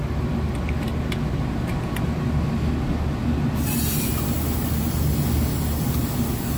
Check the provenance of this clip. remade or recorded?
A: recorded